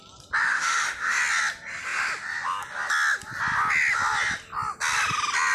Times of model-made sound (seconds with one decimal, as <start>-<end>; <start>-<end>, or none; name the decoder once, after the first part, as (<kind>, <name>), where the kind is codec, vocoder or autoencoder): 0.4-1.2 (autoencoder, DAC-VAE)